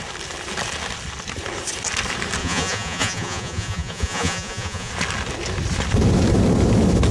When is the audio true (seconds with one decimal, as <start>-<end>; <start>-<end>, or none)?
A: 0.0-2.4; 4.9-7.1

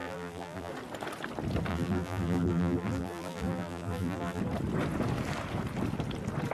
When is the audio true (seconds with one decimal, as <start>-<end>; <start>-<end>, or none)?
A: 0.7-1.7; 4.4-6.5

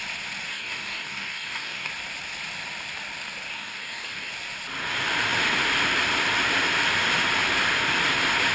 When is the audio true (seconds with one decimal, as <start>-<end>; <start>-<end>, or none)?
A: 0.0-0.5; 1.9-3.5; 4.3-8.5

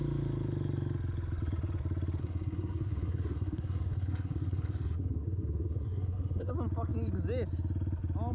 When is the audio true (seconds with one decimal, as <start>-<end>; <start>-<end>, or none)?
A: 0.0-2.2; 6.5-8.3

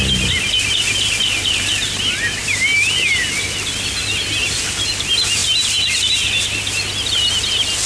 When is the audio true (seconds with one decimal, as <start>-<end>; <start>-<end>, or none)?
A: 0.0-7.9